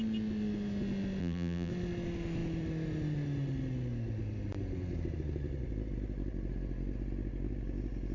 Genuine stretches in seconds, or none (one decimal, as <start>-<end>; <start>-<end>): 0.0-1.2; 1.7-8.1